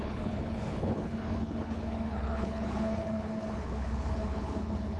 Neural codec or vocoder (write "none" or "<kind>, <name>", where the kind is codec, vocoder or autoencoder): codec, HILCodec